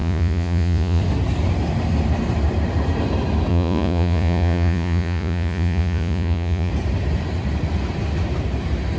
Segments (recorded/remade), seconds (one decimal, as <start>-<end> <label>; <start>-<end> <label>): 0.0-1.0 remade; 1.0-3.5 recorded; 3.5-6.7 remade; 6.7-9.0 recorded